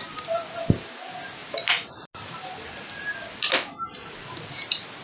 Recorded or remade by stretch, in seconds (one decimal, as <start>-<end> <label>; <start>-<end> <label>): 0.0-5.0 recorded